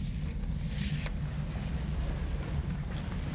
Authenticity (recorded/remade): recorded